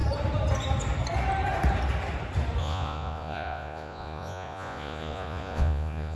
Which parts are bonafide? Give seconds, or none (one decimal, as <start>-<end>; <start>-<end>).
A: 0.0-2.6